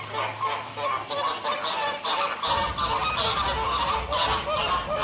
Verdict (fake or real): real